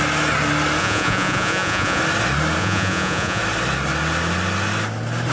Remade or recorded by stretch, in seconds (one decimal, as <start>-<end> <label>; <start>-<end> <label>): 0.0-0.8 recorded; 0.8-2.0 remade; 2.0-2.6 recorded; 2.6-3.4 remade; 3.4-5.3 recorded